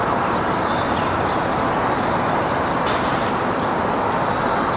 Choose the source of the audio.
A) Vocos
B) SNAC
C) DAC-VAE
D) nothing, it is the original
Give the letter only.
D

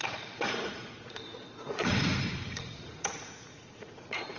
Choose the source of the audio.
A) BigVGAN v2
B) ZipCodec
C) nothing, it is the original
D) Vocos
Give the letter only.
D